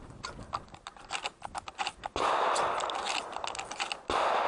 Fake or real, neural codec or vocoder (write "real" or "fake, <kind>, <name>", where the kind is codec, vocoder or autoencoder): real